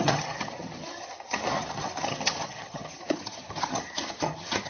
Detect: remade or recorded remade